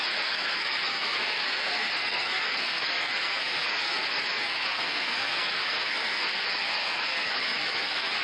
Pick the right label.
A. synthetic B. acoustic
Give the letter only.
A